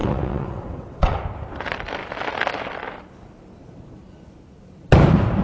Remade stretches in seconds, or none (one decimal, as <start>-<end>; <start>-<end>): 0.0-1.2